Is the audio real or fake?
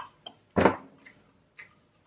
real